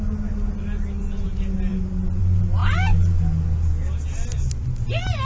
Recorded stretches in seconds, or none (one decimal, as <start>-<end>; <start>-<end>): 0.0-5.3